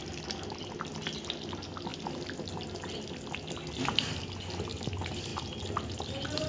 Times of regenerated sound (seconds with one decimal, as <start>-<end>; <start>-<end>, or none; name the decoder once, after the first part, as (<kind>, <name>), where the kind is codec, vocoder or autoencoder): none